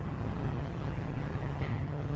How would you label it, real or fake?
fake